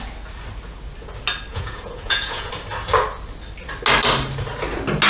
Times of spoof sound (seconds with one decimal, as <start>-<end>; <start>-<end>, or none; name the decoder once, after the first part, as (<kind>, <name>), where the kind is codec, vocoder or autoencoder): 1.5-2.5 (vocoder, Vocos)